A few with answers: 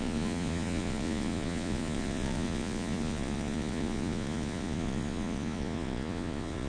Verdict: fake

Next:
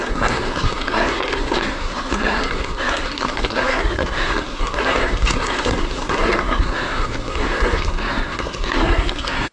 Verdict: fake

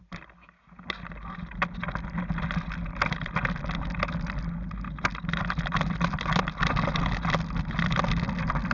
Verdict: real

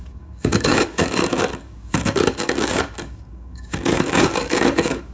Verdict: fake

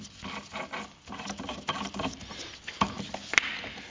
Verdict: real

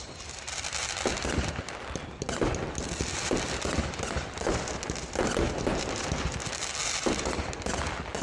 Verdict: real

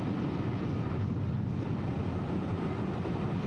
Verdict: real